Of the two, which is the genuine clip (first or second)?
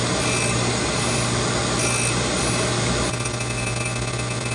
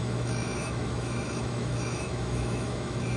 first